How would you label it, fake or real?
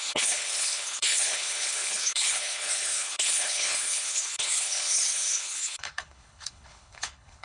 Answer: fake